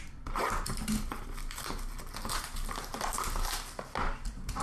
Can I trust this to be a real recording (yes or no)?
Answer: yes